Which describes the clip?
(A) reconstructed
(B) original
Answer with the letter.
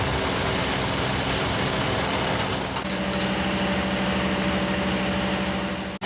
B